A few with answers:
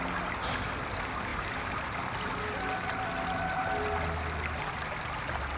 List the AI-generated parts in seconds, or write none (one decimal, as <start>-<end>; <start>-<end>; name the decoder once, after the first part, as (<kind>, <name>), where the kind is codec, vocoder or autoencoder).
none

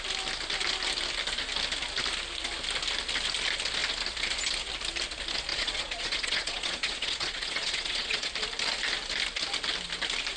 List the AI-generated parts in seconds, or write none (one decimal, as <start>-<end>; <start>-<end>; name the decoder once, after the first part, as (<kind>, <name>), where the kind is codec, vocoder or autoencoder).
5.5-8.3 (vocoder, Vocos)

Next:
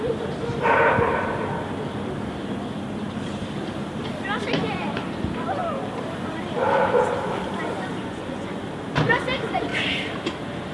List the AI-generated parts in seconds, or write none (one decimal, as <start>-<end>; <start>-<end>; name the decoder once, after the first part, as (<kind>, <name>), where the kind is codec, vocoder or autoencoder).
8.0-8.6 (vocoder, Vocos)

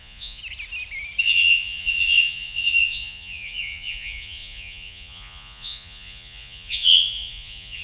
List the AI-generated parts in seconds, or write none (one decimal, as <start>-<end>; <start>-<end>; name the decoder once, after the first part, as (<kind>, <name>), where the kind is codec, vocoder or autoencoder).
0.0-0.4 (vocoder, Vocos); 1.2-7.8

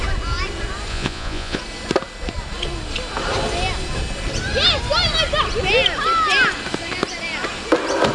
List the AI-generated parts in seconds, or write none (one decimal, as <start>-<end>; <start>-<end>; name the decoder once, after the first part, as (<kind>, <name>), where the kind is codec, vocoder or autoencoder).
0.9-1.6 (vocoder, Vocos)

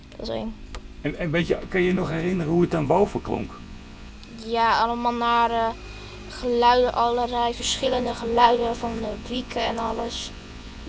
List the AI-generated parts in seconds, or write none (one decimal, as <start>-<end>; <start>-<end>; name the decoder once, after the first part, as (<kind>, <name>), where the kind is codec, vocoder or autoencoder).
1.4-4.1 (vocoder, Vocos); 7.6-10.9

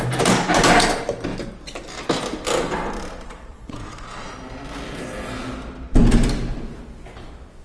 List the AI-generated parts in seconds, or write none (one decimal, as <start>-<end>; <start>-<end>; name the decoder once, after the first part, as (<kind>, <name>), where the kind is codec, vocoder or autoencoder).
3.5-4.3 (vocoder, Vocos)

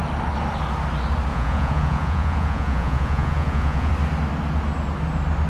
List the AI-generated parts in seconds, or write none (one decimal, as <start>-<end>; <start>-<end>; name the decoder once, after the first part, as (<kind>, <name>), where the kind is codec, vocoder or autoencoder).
1.3-3.9 (vocoder, Vocos)